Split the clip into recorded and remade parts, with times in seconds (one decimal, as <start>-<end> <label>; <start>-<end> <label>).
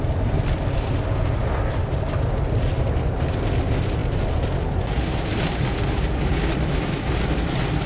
0.0-7.9 recorded